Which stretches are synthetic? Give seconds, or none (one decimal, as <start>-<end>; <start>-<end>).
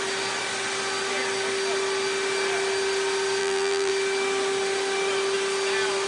3.4-3.9